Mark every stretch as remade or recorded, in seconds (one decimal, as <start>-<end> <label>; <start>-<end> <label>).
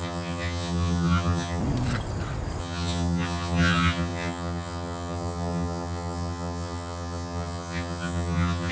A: 0.0-1.6 remade; 1.6-2.6 recorded; 2.6-8.7 remade